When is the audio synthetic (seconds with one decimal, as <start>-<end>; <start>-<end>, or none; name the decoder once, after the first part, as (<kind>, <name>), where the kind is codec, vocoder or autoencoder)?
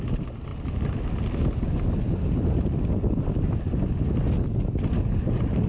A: none